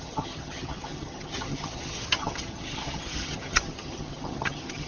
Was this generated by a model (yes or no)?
yes